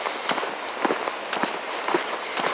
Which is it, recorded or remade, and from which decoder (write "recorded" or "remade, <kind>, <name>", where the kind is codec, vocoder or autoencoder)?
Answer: recorded